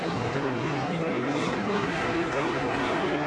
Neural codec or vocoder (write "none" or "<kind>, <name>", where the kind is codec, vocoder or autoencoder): codec, SNAC